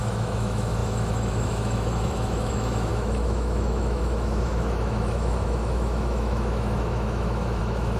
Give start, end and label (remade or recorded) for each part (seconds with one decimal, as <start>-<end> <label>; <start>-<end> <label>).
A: 0.0-8.0 remade